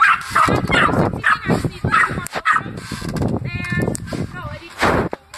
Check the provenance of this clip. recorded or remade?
recorded